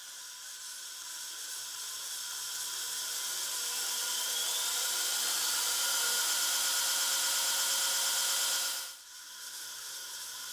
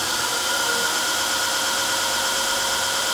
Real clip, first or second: first